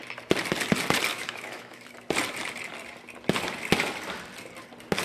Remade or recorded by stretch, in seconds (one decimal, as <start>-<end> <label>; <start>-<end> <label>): 0.0-1.1 recorded; 1.1-1.9 remade; 1.9-5.0 recorded

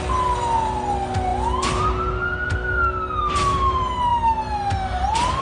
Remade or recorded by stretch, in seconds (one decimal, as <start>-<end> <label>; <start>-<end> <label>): 0.0-5.4 recorded

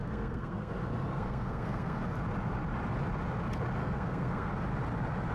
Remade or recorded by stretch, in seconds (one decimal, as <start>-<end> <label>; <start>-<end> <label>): 0.0-0.7 remade; 0.7-1.1 recorded; 1.1-2.0 remade; 2.0-3.8 recorded; 3.8-4.5 remade; 4.5-5.3 recorded

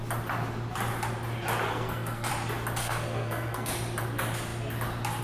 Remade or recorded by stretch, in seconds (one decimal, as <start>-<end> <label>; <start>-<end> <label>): 0.0-1.7 recorded; 1.7-2.3 remade; 2.3-2.8 recorded; 2.8-3.7 remade; 3.7-5.2 recorded

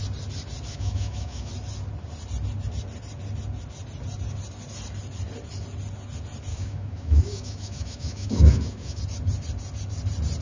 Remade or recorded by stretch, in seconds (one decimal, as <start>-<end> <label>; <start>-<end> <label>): 0.0-0.7 recorded; 0.7-1.5 remade; 1.5-6.5 recorded; 6.5-9.0 remade; 9.0-10.4 recorded

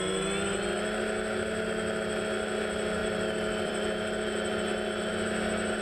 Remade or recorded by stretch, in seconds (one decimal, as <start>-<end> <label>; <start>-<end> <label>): 0.0-3.0 recorded; 3.0-5.1 remade; 5.1-5.8 recorded